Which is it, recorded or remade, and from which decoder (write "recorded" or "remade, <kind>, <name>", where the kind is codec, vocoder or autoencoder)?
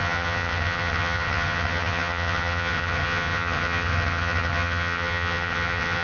remade, vocoder, HiFi-GAN